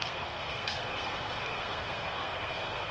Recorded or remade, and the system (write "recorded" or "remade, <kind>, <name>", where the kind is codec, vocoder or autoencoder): remade, codec, SNAC